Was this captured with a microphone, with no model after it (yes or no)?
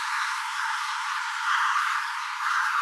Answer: no